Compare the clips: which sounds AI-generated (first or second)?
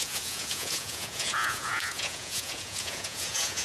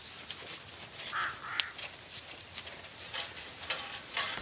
first